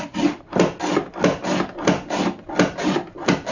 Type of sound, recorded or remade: recorded